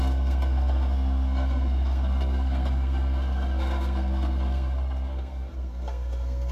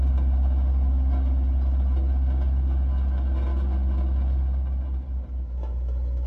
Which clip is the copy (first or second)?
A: first